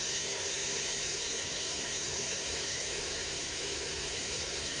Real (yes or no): no